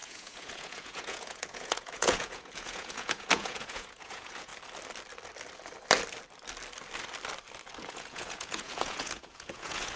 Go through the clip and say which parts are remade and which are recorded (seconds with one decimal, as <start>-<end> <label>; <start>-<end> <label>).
0.0-4.5 remade; 4.5-7.8 recorded; 7.8-10.0 remade